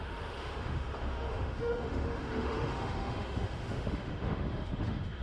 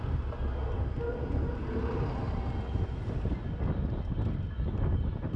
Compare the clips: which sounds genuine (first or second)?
second